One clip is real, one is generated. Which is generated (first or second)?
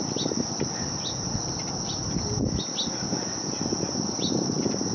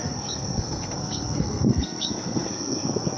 second